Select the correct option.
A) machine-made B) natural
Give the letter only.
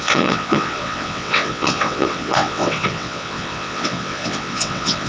A